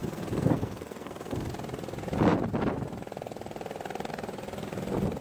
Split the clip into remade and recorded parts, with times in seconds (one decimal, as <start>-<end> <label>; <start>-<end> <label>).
0.0-1.5 remade; 1.5-5.2 recorded